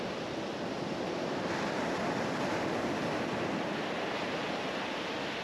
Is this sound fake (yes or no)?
no